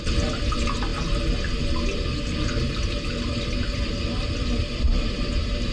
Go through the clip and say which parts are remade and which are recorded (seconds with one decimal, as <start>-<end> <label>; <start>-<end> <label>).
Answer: 0.0-5.7 recorded